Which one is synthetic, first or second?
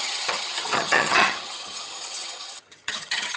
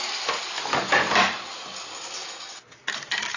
first